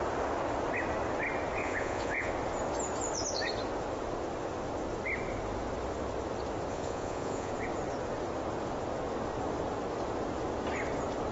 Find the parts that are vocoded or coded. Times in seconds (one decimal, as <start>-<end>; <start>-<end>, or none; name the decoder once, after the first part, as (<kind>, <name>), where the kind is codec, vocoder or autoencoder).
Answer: 1.6-2.3 (vocoder, Vocos); 6.7-7.5